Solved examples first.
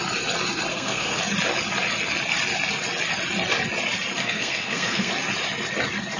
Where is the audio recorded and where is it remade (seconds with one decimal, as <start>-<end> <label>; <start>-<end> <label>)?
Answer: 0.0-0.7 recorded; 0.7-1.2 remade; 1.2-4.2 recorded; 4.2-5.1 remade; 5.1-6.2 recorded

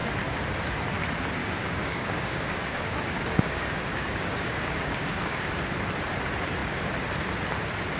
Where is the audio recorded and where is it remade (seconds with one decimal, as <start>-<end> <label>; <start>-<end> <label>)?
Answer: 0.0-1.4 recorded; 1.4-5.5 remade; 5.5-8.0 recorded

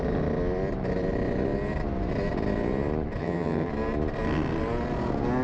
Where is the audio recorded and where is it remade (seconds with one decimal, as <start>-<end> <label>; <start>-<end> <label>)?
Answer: 0.0-3.2 recorded; 3.2-3.7 remade; 3.7-5.4 recorded

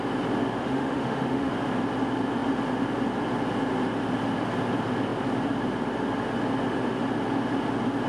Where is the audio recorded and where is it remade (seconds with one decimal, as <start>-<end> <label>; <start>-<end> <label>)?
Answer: 0.0-0.6 recorded; 0.6-1.5 remade; 1.5-8.1 recorded